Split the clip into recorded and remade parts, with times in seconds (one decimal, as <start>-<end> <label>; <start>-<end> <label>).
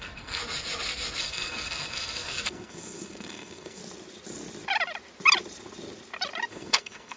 0.0-0.4 remade; 0.4-1.2 recorded; 1.2-3.8 remade; 3.8-6.5 recorded; 6.5-7.2 remade